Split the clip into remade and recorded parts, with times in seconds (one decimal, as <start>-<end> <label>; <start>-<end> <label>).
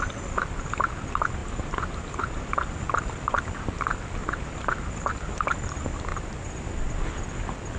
0.0-1.4 recorded; 1.4-2.7 remade; 2.7-4.2 recorded; 4.2-5.0 remade; 5.0-6.1 recorded; 6.1-6.9 remade; 6.9-7.8 recorded